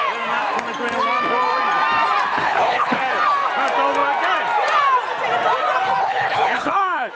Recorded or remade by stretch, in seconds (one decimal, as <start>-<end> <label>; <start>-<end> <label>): 0.0-2.3 recorded; 2.3-3.0 remade; 3.0-6.0 recorded; 6.0-7.1 remade